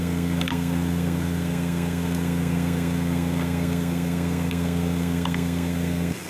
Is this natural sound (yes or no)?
no